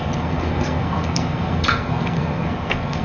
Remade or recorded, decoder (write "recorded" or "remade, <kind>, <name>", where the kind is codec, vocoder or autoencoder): remade, codec, SNAC